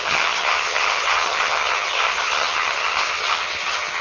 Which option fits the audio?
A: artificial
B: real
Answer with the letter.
A